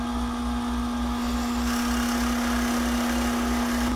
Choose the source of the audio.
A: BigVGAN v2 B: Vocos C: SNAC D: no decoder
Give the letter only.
D